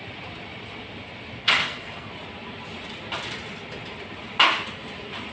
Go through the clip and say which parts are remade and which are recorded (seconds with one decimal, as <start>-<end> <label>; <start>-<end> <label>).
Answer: 0.0-1.4 recorded; 1.4-2.1 remade; 2.1-5.3 recorded